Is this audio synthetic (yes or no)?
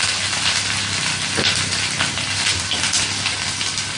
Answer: no